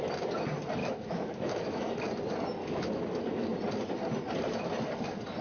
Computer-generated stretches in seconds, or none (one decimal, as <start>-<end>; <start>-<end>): 0.8-1.9; 2.6-3.2